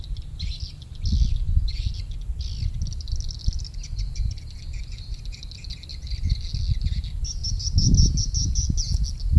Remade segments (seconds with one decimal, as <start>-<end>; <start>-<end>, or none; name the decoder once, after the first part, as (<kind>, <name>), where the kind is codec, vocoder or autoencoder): none